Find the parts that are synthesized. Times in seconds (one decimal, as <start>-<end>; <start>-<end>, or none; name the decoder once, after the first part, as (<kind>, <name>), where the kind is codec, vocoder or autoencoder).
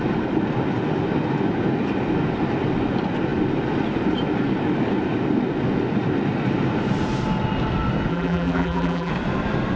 8.1-9.1 (vocoder, BigVGAN v2)